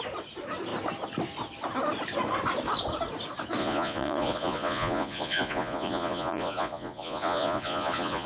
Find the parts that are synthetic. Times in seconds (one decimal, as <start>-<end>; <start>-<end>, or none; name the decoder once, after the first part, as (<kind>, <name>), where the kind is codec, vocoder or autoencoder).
3.6-8.3 (vocoder, Vocos)